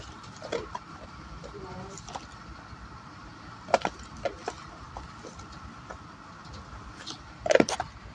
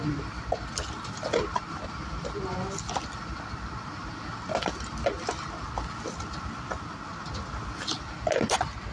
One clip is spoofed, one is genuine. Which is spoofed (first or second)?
first